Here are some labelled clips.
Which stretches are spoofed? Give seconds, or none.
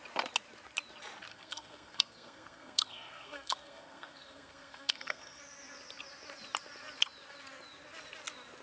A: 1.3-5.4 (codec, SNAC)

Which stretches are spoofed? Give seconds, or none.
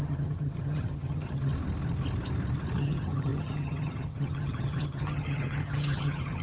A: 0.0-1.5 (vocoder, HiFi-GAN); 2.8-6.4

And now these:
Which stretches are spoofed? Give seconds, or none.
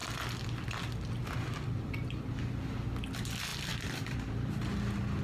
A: 3.5-4.5 (vocoder, BigVGAN v2)